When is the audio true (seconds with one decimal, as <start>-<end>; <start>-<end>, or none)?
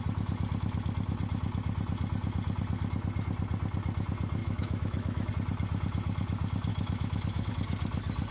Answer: 0.0-4.4; 5.3-6.7; 7.5-8.3